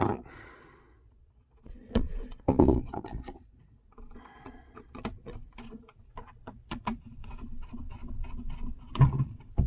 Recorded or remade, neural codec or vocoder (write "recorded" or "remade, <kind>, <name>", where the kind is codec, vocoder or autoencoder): remade, vocoder, Vocos